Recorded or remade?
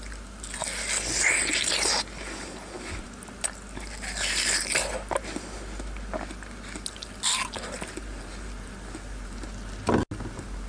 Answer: recorded